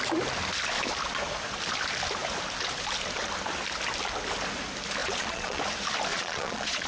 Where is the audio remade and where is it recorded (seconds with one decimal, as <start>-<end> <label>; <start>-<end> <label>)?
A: 0.0-5.0 recorded; 5.0-5.6 remade; 5.6-6.1 recorded; 6.1-6.9 remade